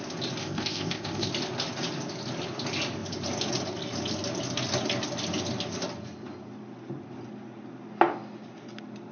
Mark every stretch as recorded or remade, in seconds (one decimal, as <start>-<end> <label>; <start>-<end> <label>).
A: 0.0-0.4 recorded; 0.4-1.3 remade; 1.3-9.1 recorded